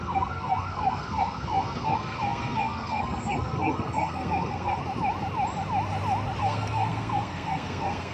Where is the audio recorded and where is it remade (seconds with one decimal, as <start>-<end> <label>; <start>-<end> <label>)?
0.0-4.8 remade; 4.8-6.4 recorded; 6.4-8.1 remade